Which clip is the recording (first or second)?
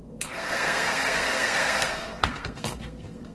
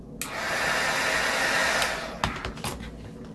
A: second